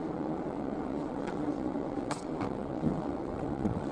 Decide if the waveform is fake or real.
fake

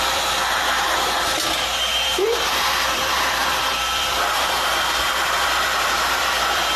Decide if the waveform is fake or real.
fake